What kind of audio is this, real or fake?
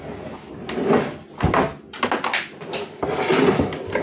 real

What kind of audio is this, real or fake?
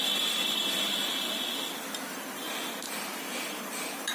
real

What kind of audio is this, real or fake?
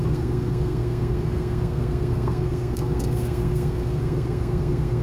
fake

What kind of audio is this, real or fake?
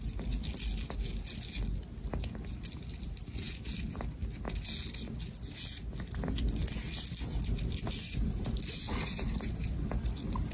real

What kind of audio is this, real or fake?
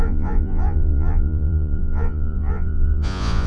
fake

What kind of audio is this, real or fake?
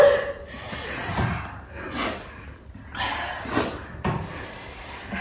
real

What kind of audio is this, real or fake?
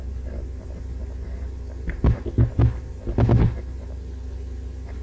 real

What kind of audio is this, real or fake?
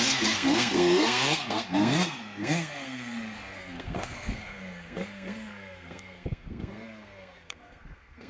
fake